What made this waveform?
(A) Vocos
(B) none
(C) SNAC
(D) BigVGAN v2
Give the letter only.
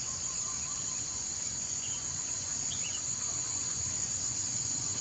A